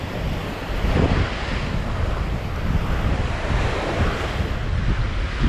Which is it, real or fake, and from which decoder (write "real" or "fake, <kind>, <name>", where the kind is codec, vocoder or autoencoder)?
real